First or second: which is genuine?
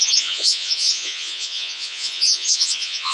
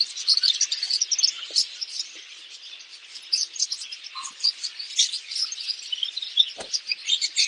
second